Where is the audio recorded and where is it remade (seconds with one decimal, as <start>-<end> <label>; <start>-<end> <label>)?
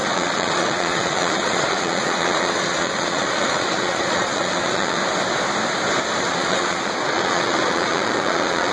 0.0-5.0 remade; 5.0-6.2 recorded; 6.2-8.7 remade